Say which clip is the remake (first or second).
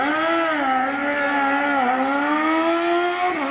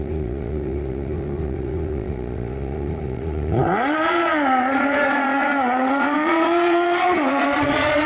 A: second